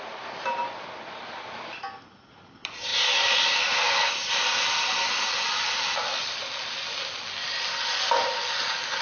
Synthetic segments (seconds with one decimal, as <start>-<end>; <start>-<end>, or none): none

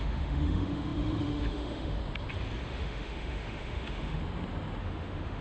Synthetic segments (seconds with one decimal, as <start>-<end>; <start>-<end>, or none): 0.0-2.0; 2.7-4.2; 4.8-5.4

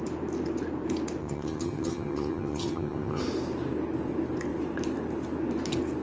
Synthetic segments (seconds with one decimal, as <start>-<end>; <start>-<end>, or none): 1.2-3.2

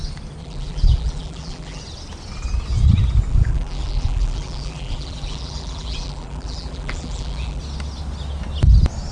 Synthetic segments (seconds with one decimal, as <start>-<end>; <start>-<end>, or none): 0.4-1.8; 3.3-7.6

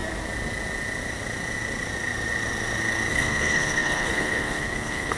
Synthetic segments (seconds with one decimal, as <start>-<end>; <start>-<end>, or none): 3.1-5.2

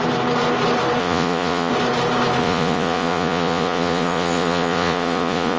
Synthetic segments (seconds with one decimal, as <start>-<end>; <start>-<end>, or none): 1.0-1.7; 2.4-5.6

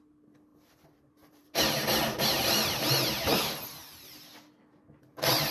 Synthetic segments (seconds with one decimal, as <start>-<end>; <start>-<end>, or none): 0.5-3.6

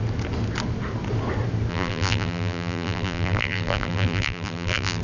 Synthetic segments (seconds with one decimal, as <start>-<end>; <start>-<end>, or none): 1.7-5.0